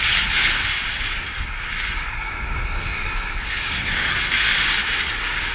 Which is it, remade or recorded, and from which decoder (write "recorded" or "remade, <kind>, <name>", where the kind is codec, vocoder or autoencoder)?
remade, codec, DAC